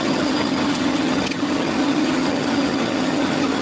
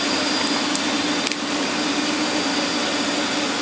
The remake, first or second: first